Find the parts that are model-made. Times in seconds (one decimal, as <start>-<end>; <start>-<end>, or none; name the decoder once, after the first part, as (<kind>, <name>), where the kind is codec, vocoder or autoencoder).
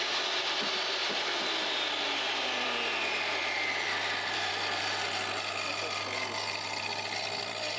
1.0-4.5 (vocoder, BigVGAN v2)